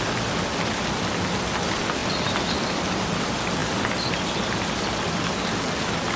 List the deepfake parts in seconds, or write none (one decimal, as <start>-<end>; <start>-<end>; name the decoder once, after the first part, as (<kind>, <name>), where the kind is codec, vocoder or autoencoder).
3.6-5.3 (vocoder, BigVGAN v2)